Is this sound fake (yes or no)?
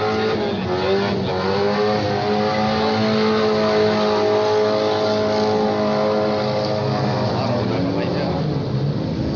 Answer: no